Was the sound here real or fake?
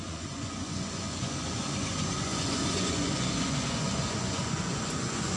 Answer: fake